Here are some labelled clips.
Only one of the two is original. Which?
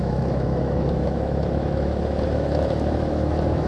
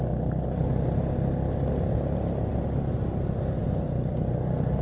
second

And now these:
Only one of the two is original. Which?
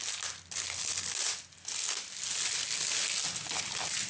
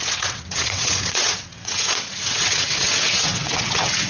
first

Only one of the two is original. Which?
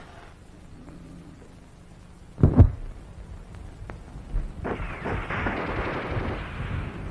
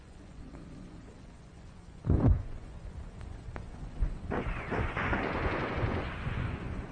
first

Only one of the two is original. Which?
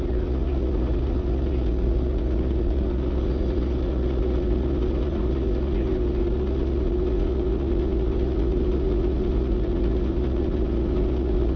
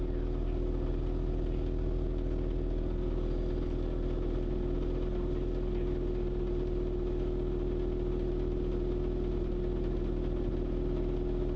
second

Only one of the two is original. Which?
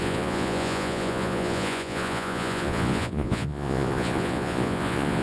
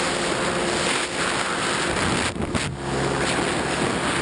second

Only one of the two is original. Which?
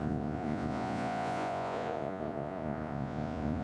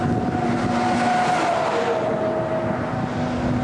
second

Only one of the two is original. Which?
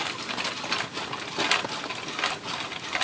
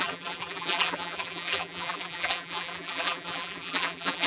first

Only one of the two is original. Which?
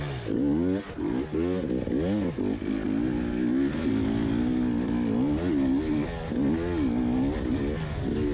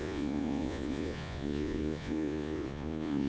first